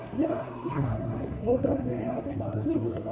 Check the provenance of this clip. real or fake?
fake